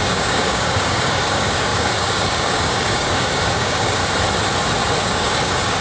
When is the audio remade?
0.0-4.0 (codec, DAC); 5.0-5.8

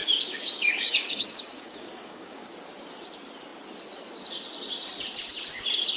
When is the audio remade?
0.0-2.5 (codec, DAC)

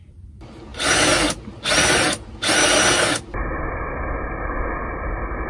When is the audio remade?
none

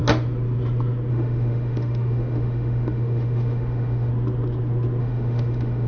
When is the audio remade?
1.1-4.1 (autoencoder, DAC-VAE); 5.0-5.9

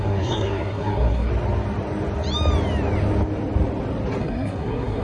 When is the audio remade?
0.0-1.3 (codec, SNAC); 4.2-5.0

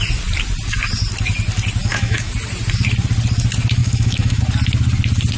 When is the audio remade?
1.8-2.3 (autoencoder, DAC-VAE); 3.8-4.4

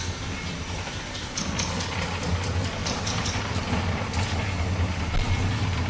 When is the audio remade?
2.8-3.4 (vocoder, BigVGAN v2)